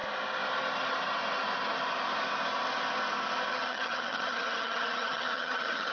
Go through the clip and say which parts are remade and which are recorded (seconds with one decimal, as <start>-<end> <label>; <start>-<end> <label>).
0.0-3.5 recorded; 3.5-5.9 remade